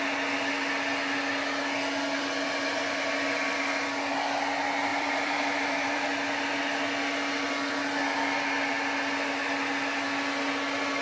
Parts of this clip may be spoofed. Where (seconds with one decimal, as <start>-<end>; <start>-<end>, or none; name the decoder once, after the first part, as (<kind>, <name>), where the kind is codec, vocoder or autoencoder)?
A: 4.9-6.0 (vocoder, BigVGAN v2)